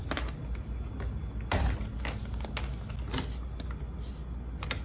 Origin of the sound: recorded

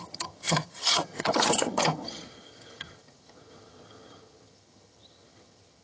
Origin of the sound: remade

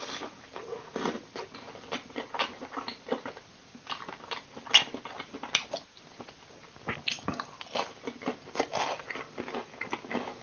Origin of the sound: recorded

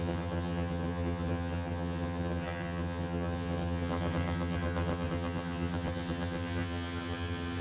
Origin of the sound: remade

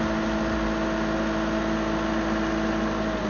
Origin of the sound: recorded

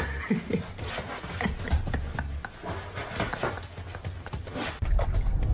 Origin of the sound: recorded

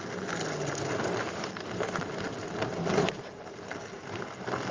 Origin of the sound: recorded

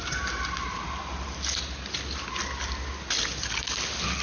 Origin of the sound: recorded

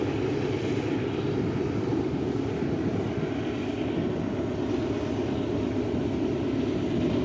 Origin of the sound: recorded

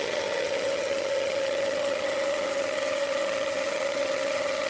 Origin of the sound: remade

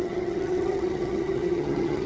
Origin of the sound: remade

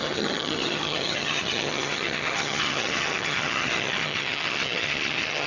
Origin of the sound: remade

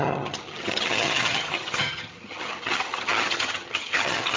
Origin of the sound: remade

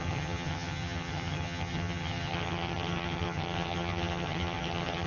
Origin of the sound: remade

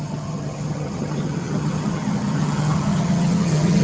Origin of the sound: remade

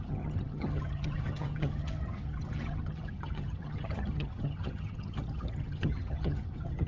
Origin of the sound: remade